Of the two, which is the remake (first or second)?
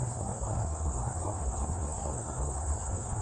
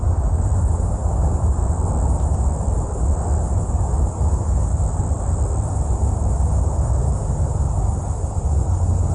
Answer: first